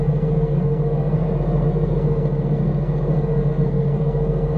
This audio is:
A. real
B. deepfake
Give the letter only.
B